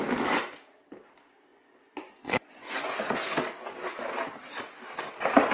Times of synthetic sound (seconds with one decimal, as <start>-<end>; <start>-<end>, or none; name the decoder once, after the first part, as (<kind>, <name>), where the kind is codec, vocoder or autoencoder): 1.5-3.0 (vocoder, Vocos)